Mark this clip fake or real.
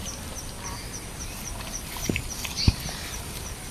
real